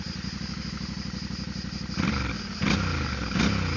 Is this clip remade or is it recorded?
recorded